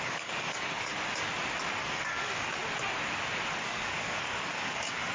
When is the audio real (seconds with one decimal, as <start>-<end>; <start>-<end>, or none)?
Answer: 0.9-1.8; 2.6-3.6